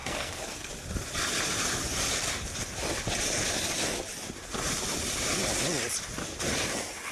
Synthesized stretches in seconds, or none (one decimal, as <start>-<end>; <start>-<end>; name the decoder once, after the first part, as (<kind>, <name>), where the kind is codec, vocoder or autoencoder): 0.0-0.7 (codec, SNAC)